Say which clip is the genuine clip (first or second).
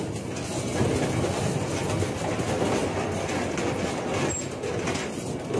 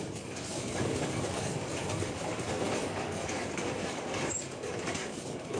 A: first